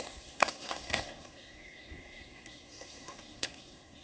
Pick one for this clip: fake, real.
fake